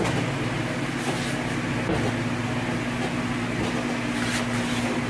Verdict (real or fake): real